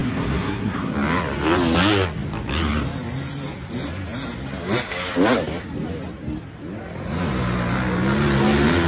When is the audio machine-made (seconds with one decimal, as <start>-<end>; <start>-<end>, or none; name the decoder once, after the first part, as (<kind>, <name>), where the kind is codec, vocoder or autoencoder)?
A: 0.0-0.9 (codec, SNAC)